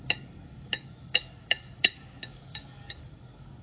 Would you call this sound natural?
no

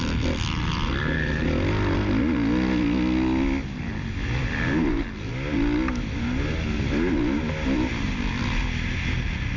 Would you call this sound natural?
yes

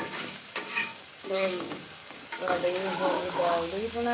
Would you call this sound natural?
no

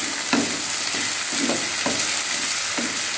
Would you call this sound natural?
yes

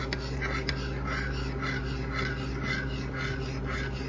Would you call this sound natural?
yes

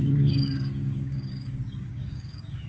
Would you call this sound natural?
no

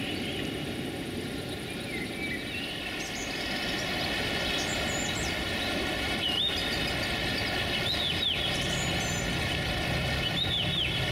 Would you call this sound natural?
yes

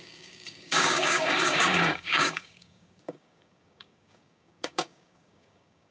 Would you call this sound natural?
no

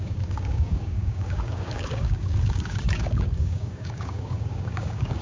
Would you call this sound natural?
no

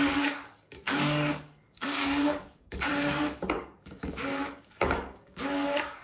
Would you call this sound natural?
no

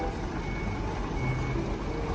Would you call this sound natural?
yes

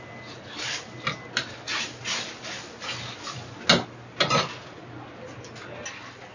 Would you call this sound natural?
yes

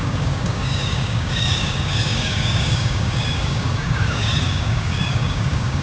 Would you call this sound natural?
no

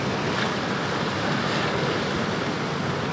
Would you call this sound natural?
yes